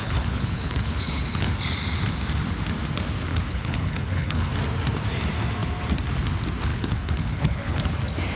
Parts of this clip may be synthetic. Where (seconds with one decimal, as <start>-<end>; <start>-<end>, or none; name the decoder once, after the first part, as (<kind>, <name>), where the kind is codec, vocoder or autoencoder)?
0.0-1.5 (codec, HILCodec); 3.3-4.5; 6.7-7.8